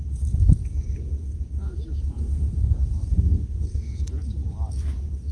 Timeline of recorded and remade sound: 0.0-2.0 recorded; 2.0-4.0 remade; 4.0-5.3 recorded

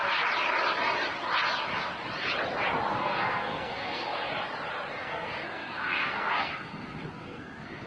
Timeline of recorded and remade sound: 0.0-2.9 recorded; 2.9-4.2 remade; 4.2-4.9 recorded; 4.9-7.9 remade

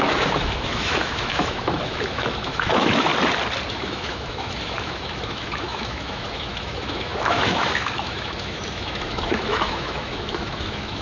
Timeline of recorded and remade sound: 0.0-3.1 remade; 3.1-3.7 recorded; 3.7-11.0 remade

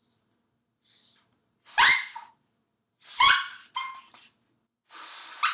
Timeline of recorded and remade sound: 0.0-5.5 recorded

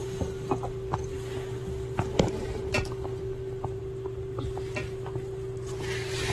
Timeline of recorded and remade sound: 0.0-6.3 recorded